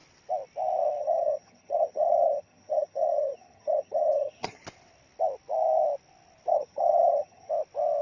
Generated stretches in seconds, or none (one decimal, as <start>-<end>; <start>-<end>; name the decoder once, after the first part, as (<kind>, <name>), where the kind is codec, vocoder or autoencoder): 1.0-4.6 (vocoder, HiFi-GAN); 6.5-7.5